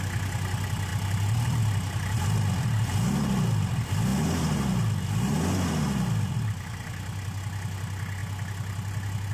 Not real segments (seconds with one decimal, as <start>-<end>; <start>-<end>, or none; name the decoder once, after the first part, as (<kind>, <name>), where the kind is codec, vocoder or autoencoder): 0.9-1.6 (vocoder, BigVGAN v2)